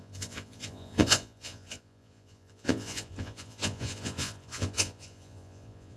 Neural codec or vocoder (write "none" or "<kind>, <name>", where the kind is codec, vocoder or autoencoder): vocoder, Vocos